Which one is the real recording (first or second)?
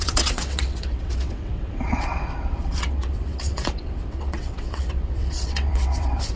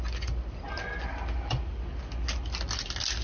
second